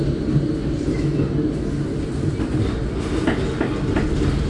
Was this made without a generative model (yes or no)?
yes